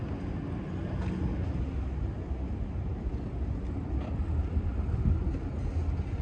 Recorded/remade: recorded